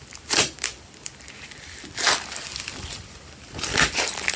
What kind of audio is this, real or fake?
real